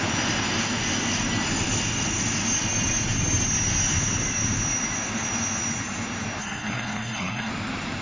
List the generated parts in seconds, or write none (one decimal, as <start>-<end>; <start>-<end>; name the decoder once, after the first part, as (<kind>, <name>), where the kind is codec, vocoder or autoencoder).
6.4-7.5 (codec, SNAC)